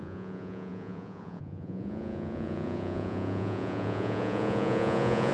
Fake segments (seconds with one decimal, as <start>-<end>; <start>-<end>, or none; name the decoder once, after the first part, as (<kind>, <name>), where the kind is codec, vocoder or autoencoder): 0.0-5.3 (vocoder, Vocos)